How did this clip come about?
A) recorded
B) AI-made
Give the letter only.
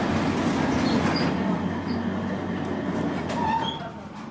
A